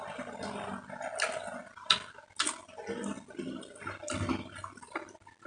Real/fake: real